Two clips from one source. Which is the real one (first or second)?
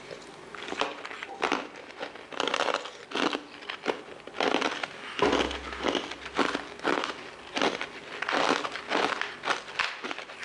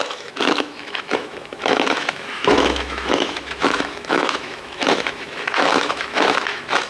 first